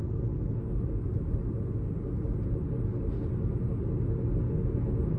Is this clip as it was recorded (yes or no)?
yes